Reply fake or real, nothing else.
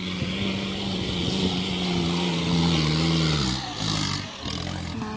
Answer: real